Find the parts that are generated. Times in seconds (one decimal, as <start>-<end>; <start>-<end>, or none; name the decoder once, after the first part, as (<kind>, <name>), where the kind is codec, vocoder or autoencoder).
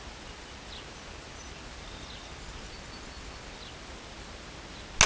none